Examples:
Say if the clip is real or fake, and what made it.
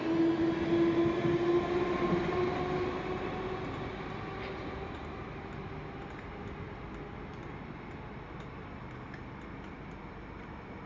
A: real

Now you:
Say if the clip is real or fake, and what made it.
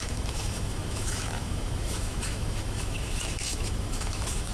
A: fake, autoencoder, DAC-VAE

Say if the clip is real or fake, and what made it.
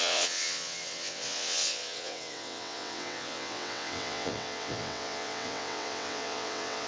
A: fake, vocoder, WaveNeXt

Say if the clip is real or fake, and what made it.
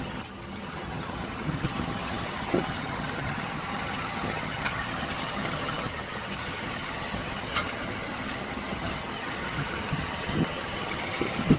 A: fake, vocoder, HiFi-GAN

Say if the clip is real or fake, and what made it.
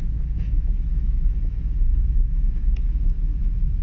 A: fake, autoencoder, DAC-VAE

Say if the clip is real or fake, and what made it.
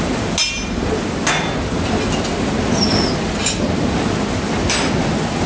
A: real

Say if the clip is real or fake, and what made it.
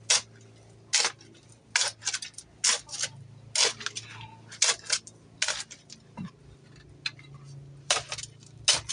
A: real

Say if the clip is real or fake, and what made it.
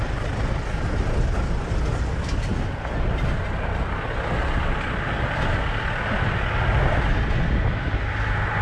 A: real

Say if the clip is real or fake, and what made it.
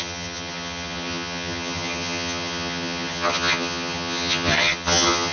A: fake, vocoder, HiFi-GAN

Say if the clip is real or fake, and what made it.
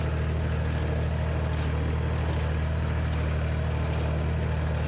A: real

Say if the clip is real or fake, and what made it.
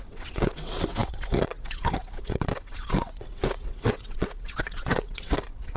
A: fake, vocoder, WaveNeXt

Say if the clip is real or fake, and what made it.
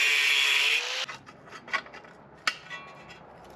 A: real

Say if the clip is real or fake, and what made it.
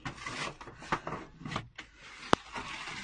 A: real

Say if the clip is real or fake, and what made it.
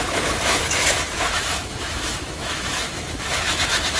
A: fake, autoencoder, DAC-VAE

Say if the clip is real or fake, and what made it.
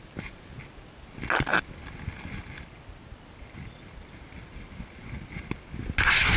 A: real